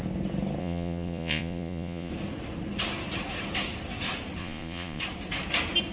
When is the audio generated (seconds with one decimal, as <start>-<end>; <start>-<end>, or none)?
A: 0.6-2.1; 4.4-5.0